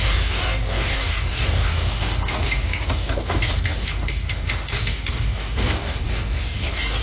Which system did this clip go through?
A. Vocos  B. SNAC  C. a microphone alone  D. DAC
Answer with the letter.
D